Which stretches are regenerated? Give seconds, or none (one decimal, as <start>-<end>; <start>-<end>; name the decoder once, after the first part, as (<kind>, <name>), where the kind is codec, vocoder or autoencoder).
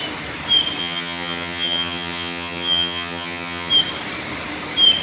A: 0.8-3.7 (vocoder, HiFi-GAN)